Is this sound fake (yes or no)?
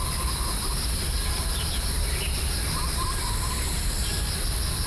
no